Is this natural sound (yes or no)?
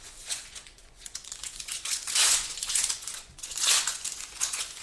no